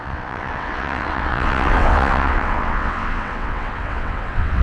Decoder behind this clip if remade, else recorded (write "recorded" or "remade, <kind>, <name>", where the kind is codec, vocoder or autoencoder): remade, vocoder, WaveNeXt